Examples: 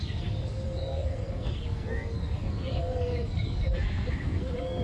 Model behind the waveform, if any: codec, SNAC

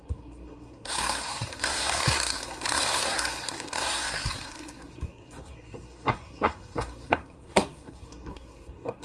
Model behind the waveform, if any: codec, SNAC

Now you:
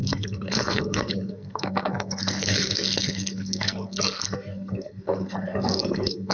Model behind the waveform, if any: codec, SNAC